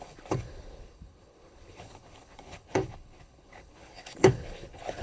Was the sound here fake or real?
fake